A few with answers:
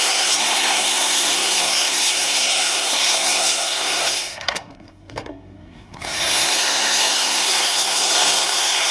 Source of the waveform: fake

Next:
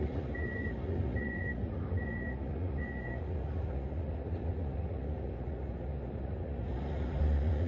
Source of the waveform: fake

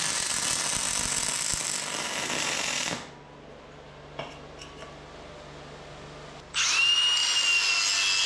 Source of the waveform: real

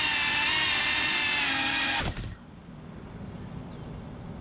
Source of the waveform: real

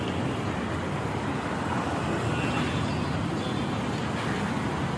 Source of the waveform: real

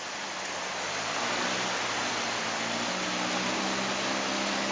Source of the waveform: real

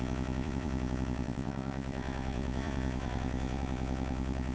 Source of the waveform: fake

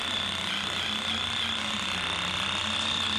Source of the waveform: real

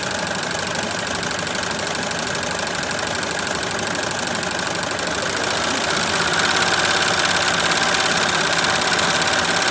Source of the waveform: real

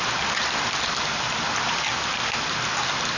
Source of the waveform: fake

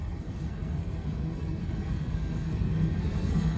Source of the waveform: fake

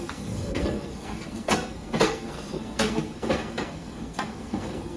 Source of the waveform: fake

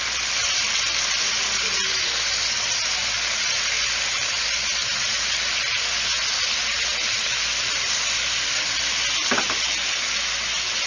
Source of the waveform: real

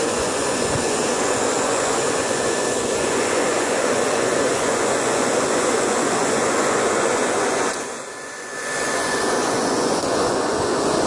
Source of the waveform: fake